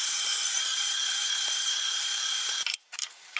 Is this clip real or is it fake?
fake